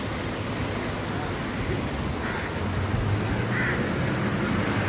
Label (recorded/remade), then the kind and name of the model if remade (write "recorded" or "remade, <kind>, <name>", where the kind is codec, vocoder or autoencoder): recorded